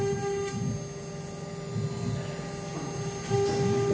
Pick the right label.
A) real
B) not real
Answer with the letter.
A